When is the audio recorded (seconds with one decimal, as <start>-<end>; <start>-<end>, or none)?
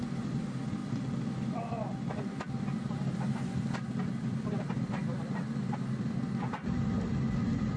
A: 0.0-7.8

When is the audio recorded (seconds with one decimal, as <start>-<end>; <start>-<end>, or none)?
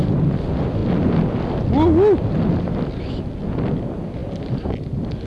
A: 0.0-5.3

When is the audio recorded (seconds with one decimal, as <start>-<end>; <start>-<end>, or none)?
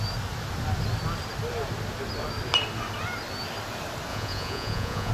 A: 0.0-4.1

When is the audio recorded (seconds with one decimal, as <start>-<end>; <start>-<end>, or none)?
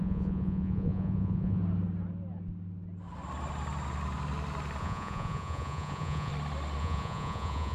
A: 1.6-4.8; 6.3-6.8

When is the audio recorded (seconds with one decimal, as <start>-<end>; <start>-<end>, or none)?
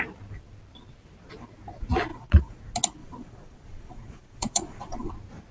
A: 0.0-2.1; 2.6-3.0; 5.1-5.5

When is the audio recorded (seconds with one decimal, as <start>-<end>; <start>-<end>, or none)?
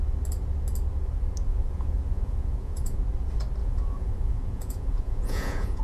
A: 0.0-1.5; 3.0-3.6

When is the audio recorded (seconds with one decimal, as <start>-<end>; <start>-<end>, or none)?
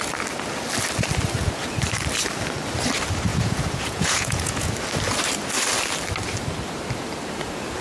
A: 0.0-3.3; 4.7-7.8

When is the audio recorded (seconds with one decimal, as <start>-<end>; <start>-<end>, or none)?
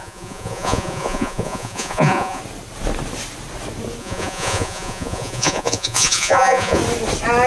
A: 2.4-4.0; 6.8-7.5